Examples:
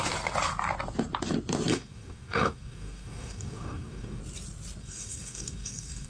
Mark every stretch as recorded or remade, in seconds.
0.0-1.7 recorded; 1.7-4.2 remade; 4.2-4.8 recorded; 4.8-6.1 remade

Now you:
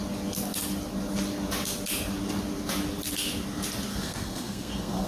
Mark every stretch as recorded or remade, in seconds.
0.0-3.9 recorded; 3.9-5.1 remade

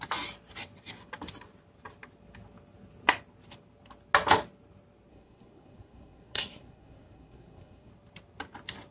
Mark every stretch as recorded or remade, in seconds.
0.0-5.1 recorded; 5.1-7.9 remade; 7.9-8.9 recorded

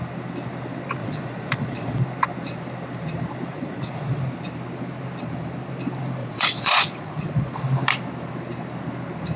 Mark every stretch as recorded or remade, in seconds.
0.0-1.0 recorded; 1.0-2.0 remade; 2.0-3.5 recorded; 3.5-4.2 remade; 4.2-6.2 recorded; 6.2-7.6 remade; 7.6-9.4 recorded

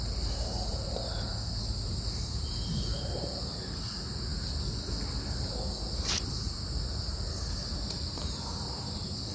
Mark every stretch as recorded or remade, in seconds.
0.0-1.3 remade; 1.3-1.8 recorded; 1.8-4.3 remade; 4.3-5.9 recorded; 5.9-9.3 remade

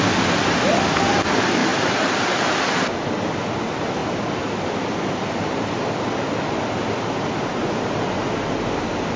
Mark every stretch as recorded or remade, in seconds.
0.0-9.2 recorded